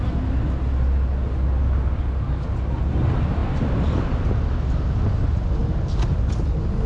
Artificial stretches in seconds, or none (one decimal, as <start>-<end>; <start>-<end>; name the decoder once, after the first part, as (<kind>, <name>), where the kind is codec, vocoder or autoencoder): none